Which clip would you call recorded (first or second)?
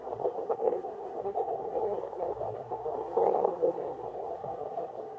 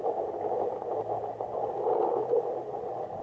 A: second